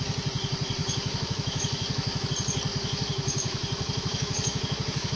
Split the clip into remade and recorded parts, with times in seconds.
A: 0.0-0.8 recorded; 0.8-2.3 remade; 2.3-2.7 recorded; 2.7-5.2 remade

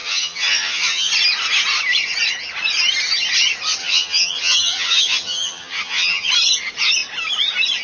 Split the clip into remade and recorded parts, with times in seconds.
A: 0.0-1.1 remade; 1.1-3.8 recorded; 3.8-6.3 remade; 6.3-7.8 recorded